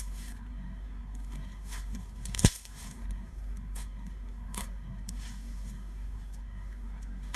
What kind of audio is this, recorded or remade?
remade